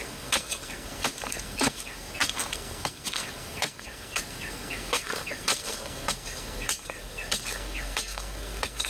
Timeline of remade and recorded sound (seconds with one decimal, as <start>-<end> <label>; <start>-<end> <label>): 0.0-8.9 remade